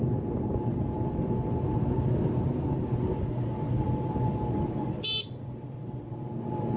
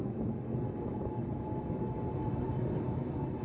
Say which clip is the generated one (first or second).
second